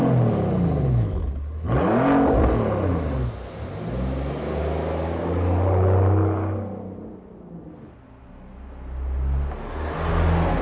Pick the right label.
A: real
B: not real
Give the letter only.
A